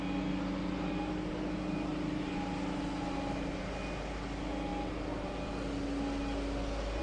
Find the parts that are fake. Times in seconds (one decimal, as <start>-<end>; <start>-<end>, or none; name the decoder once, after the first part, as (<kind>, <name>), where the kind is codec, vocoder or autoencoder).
none